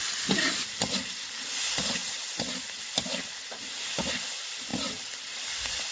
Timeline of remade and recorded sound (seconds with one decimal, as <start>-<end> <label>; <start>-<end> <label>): 0.0-5.9 recorded